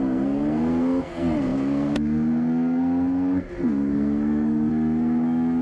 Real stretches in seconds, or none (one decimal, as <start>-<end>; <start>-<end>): none